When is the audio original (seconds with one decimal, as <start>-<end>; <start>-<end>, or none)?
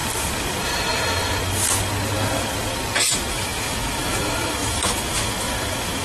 0.0-3.3